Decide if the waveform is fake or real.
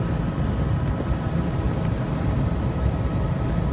real